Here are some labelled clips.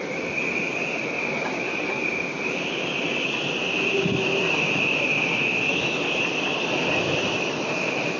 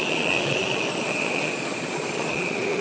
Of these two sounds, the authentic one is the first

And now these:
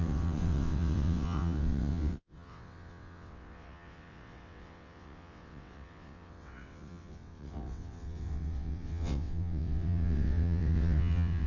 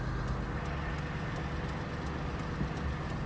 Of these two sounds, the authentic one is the second